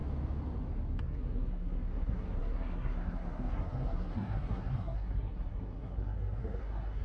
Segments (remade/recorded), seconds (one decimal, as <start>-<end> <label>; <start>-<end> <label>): 0.0-1.0 recorded; 1.0-7.0 remade